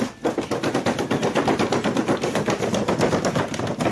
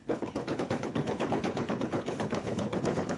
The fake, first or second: second